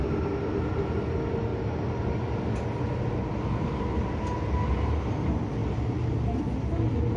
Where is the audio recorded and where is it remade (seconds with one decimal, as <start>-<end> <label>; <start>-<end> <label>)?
0.0-7.2 recorded